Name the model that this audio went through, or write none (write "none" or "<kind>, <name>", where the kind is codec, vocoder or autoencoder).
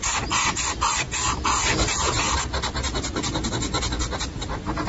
none